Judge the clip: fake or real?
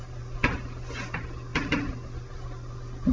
real